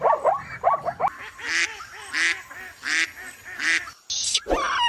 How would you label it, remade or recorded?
recorded